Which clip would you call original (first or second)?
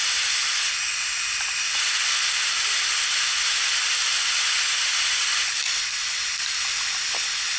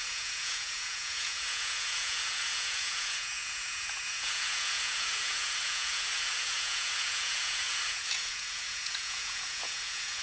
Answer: first